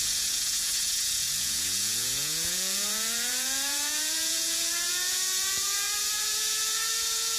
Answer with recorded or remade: remade